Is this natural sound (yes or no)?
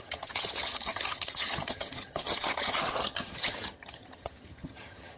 no